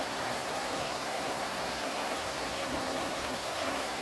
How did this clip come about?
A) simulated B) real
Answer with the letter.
A